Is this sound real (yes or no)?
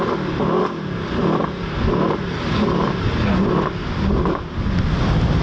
yes